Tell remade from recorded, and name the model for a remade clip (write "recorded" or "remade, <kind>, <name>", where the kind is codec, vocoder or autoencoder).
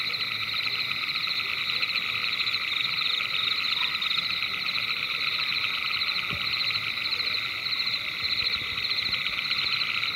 recorded